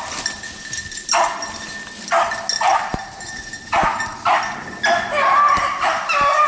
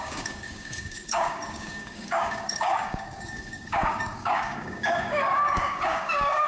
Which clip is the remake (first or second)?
second